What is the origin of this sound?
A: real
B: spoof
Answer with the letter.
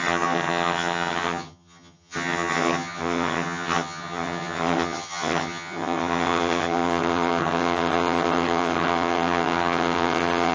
B